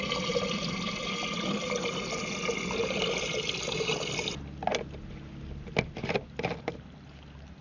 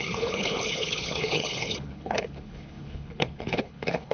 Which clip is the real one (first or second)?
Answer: first